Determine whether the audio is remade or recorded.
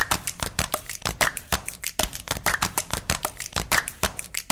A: remade